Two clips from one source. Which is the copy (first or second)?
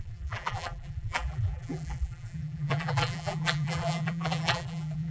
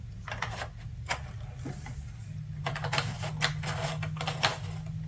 first